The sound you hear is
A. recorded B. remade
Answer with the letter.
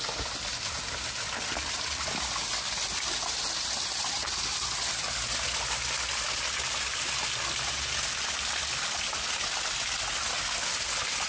A